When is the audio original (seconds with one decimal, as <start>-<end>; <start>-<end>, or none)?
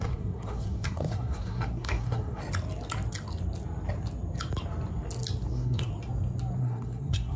2.4-5.5; 5.9-6.6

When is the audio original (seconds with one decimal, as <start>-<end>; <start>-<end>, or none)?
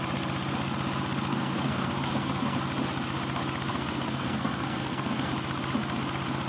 0.0-1.3; 2.6-3.7; 5.3-6.5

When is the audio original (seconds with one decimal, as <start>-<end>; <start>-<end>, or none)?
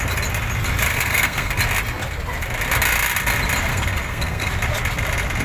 0.0-0.9; 1.6-3.7; 4.5-5.4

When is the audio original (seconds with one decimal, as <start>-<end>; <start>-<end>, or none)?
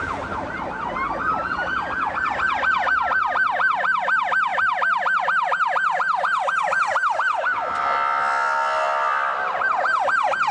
0.0-10.5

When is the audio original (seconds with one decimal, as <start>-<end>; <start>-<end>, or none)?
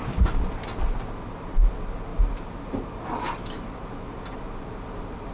0.0-5.3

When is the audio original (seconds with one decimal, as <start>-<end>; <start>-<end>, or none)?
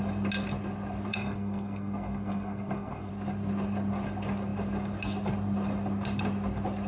0.0-1.1; 3.1-6.9